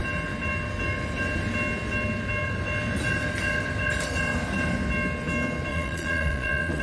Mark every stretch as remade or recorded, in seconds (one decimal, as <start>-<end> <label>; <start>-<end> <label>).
0.0-5.7 recorded; 5.7-6.8 remade